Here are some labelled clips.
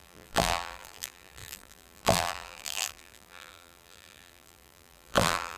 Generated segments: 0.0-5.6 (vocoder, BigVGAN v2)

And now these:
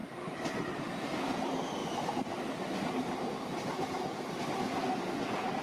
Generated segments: 0.0-0.8 (vocoder, BigVGAN v2)

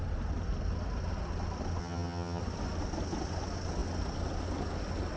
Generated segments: 1.8-2.4 (vocoder, HiFi-GAN)

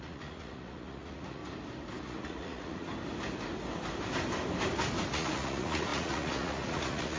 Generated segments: 0.0-1.4 (vocoder, Vocos); 2.0-2.9; 5.1-7.2

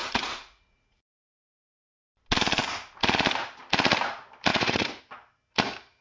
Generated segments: 0.0-2.1 (vocoder, Vocos); 4.5-5.0

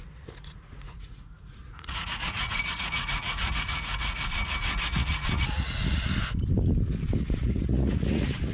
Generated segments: 0.0-6.1 (vocoder, Vocos); 7.2-8.5

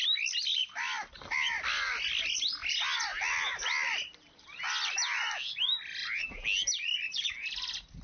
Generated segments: none